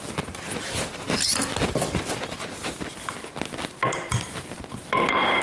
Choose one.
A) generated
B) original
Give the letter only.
B